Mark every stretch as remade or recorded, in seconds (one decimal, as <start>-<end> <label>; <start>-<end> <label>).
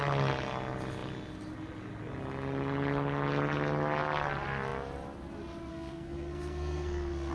0.0-5.7 recorded; 5.7-7.3 remade